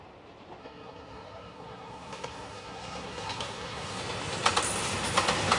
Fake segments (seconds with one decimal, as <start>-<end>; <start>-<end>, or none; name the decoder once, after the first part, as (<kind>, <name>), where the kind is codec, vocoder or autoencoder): 0.6-4.0 (codec, SNAC)

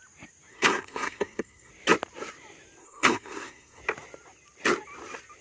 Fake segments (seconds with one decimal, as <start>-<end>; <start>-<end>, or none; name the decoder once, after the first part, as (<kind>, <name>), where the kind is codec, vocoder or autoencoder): 0.5-1.7 (codec, SNAC); 2.8-3.8

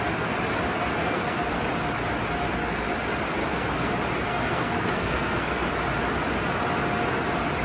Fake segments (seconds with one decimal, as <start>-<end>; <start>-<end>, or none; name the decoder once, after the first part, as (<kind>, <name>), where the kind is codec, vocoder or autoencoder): 1.0-1.6 (codec, SNAC); 3.4-3.9; 4.3-5.7

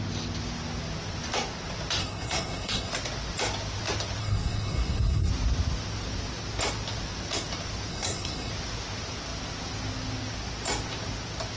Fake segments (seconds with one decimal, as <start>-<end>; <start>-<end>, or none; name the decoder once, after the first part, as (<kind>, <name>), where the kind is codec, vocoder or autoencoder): 2.0-2.9 (codec, SNAC); 4.2-5.3; 7.9-8.5

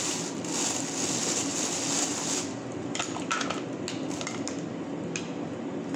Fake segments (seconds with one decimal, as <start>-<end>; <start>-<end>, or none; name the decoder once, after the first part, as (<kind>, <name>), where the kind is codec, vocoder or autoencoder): none

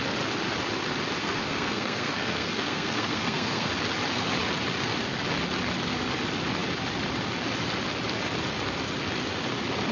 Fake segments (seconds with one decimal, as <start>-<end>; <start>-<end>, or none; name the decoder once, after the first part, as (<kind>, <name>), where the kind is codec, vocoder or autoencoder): 1.2-3.7 (codec, SNAC)

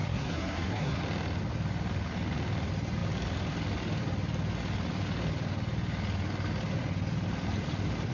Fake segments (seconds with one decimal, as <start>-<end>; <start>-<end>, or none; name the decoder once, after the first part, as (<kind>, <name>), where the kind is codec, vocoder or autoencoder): 0.0-1.0 (codec, SNAC)